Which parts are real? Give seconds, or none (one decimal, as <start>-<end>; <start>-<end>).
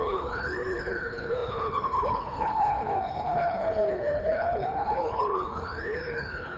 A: none